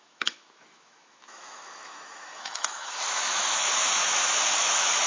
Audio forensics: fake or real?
fake